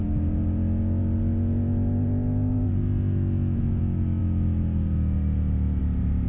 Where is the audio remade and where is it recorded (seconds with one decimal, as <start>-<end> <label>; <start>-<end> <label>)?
0.0-6.3 recorded